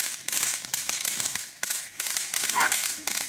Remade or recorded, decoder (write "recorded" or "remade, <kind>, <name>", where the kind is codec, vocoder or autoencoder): remade, codec, DAC